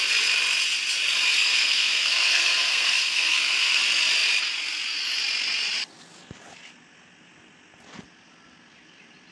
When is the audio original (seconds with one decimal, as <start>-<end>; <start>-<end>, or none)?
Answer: 0.0-1.4; 3.8-9.3